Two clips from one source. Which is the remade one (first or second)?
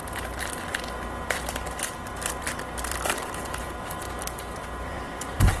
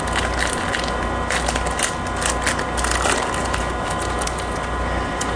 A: first